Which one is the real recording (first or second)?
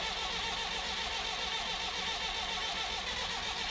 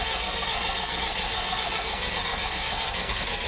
first